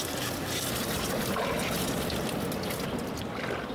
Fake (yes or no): no